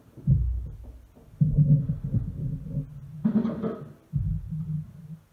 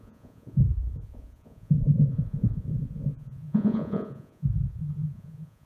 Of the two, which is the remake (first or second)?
second